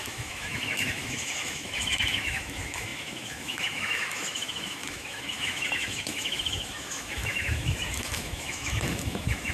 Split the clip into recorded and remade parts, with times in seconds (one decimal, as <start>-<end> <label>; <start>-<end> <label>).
0.0-9.5 remade